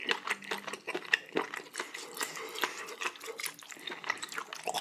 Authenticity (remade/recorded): recorded